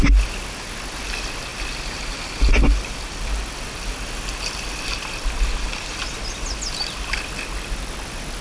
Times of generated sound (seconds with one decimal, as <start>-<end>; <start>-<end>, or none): none